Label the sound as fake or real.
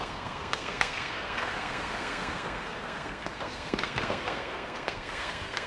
fake